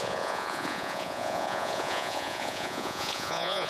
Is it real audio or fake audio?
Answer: fake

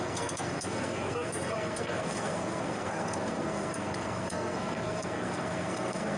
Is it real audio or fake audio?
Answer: fake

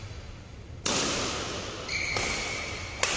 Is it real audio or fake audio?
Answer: real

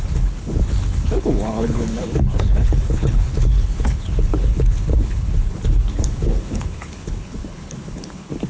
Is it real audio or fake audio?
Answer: fake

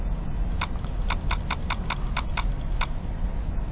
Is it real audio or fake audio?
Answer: real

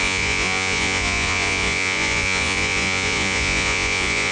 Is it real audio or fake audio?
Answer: fake